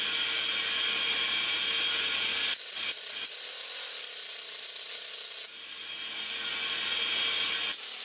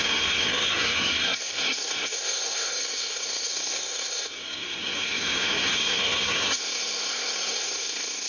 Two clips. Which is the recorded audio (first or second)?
first